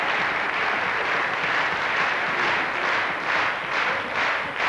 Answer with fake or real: real